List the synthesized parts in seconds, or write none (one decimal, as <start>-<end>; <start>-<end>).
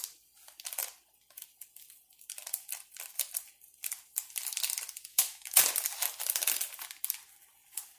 5.1-5.6